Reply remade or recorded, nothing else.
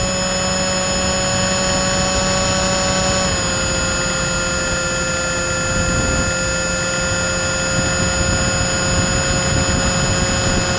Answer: recorded